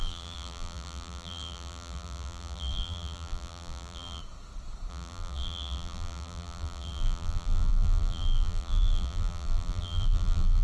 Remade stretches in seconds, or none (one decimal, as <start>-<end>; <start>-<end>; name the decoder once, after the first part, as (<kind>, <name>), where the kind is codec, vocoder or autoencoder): 0.0-4.2 (vocoder, BigVGAN v2); 4.9-10.6

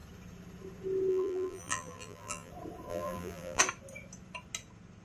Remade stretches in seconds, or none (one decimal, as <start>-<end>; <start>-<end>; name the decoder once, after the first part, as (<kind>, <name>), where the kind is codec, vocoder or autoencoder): 1.1-2.5 (vocoder, BigVGAN v2); 2.9-3.6

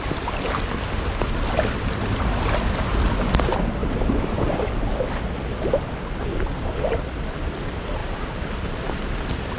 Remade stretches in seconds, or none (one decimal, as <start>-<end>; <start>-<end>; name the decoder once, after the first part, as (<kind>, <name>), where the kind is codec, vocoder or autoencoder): 3.8-4.7 (vocoder, BigVGAN v2)

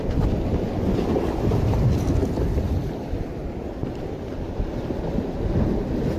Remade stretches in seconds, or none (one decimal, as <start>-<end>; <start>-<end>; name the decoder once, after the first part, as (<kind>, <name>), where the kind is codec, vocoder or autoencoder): none

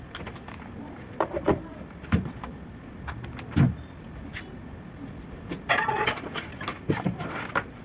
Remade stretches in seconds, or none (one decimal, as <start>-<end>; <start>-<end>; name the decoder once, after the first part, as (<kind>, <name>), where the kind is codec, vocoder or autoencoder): 6.7-7.3 (vocoder, BigVGAN v2)